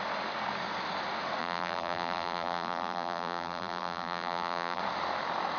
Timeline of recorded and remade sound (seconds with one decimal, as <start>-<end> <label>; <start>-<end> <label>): 0.0-1.4 recorded; 1.4-4.8 remade; 4.8-5.6 recorded